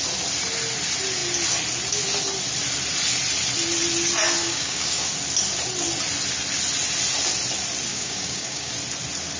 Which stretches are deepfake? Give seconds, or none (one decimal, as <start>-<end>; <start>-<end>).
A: 4.4-5.1; 7.9-8.7